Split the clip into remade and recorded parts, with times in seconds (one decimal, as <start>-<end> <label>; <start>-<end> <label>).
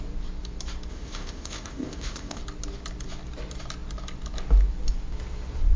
0.0-0.9 recorded; 0.9-2.4 remade; 2.4-5.8 recorded